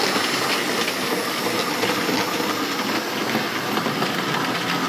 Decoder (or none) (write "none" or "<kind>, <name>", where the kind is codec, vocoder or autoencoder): none